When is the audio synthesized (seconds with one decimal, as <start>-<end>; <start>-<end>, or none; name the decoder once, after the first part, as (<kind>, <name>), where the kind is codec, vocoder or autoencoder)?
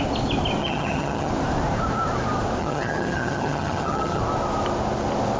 0.6-1.3 (vocoder, HiFi-GAN); 2.6-4.2